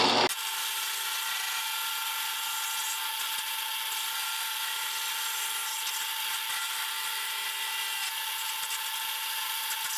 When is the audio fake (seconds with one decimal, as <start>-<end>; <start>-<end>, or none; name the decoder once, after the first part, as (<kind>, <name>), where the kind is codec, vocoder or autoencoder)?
none